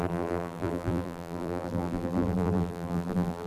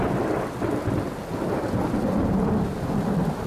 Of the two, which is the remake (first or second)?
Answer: first